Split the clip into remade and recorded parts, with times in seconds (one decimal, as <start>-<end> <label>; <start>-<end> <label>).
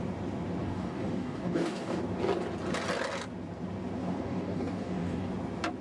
0.0-0.6 recorded; 0.6-2.0 remade; 2.0-4.0 recorded; 4.0-5.3 remade; 5.3-5.8 recorded